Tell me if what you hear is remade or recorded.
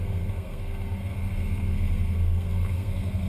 remade